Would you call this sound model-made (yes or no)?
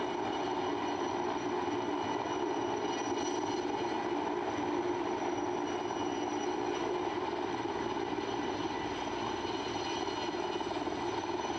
no